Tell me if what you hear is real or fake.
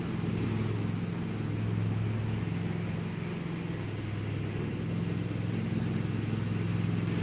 real